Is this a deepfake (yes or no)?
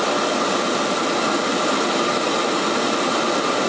no